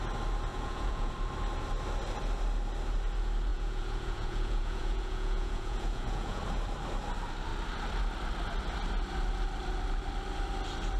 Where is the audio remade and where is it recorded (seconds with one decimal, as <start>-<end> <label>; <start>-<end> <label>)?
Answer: 0.0-0.5 recorded; 0.5-1.1 remade; 1.1-3.5 recorded; 3.5-6.4 remade; 6.4-11.0 recorded

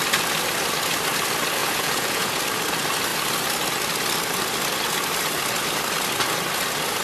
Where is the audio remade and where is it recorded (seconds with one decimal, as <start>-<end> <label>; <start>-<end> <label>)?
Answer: 0.0-1.6 recorded; 1.6-2.4 remade; 2.4-7.0 recorded